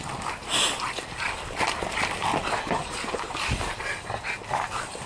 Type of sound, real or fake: real